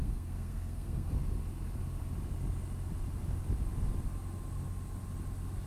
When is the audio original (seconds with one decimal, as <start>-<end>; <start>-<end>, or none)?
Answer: 1.1-5.7